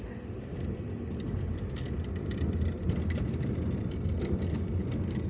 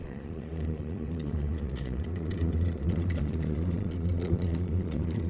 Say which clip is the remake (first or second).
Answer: second